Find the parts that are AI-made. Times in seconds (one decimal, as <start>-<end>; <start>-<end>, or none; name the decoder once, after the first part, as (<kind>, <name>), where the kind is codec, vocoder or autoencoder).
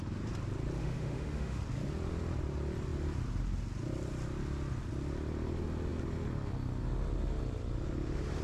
0.8-1.6 (autoencoder, DAC-VAE)